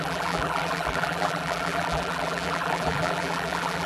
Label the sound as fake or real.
fake